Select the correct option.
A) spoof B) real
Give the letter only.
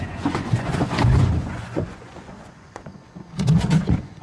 A